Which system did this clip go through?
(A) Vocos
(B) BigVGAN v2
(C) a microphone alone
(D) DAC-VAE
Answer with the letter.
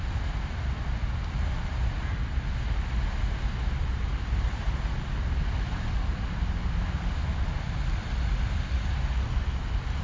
C